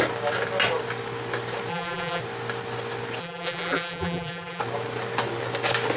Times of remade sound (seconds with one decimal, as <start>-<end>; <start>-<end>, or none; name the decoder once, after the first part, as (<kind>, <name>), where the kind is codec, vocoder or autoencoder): 1.7-2.2 (vocoder, BigVGAN v2); 3.2-4.6